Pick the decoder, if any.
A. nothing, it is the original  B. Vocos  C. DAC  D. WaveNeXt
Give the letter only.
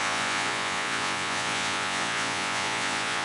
B